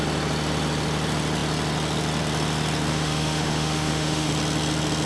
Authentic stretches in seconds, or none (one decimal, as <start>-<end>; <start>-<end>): 0.0-2.9; 4.3-5.1